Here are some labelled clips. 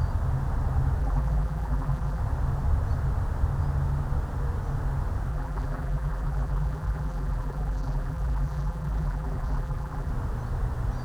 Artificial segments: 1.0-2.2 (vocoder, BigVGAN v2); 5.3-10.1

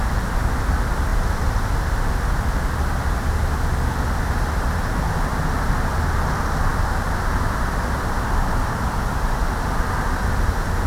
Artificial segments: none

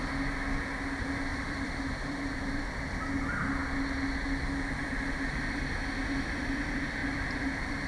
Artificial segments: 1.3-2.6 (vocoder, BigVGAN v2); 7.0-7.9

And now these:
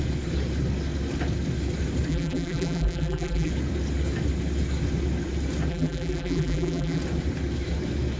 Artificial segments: 2.1-3.5 (vocoder, BigVGAN v2); 5.7-7.0